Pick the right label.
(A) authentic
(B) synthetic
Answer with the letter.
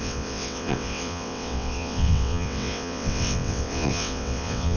B